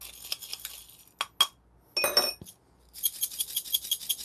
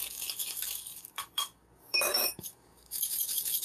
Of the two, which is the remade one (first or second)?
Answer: second